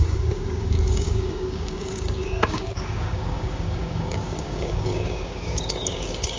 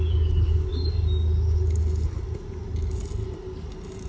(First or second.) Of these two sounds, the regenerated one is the first